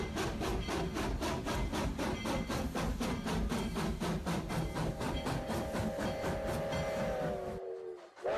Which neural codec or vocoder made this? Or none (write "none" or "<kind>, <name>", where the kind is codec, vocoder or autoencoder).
none